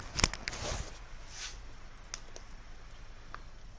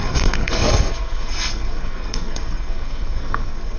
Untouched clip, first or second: first